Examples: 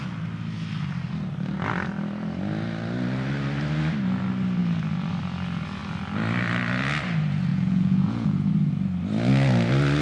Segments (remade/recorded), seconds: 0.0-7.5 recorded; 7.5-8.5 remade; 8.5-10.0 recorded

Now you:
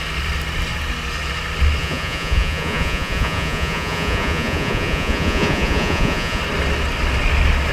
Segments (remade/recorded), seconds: 0.0-1.8 recorded; 1.8-6.4 remade; 6.4-7.7 recorded